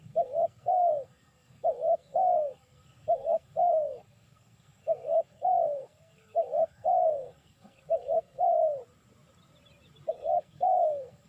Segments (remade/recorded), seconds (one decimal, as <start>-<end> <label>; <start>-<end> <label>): 0.0-8.6 remade; 8.6-10.1 recorded; 10.1-11.3 remade